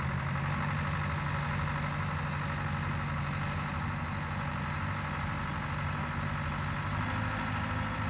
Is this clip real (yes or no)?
yes